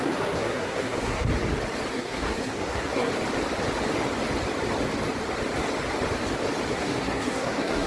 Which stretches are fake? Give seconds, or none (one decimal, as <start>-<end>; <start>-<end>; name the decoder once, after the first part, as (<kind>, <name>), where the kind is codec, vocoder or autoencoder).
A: 0.0-1.3 (codec, SNAC); 1.9-3.1; 6.7-7.9